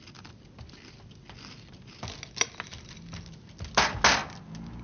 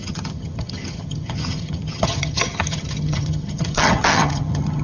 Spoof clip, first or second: second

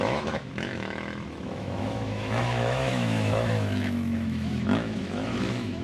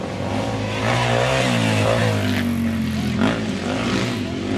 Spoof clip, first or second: first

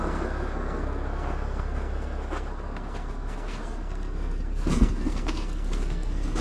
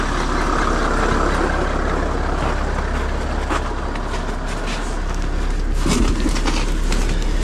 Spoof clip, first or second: first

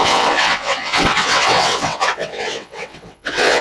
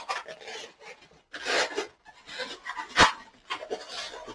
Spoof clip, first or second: first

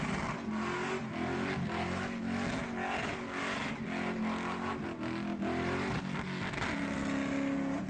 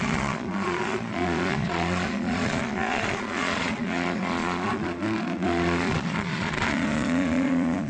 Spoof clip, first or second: second